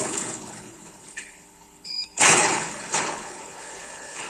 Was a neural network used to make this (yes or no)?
yes